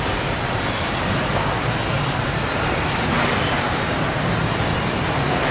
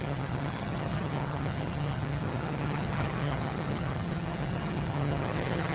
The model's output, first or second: second